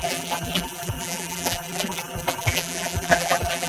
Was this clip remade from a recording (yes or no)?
yes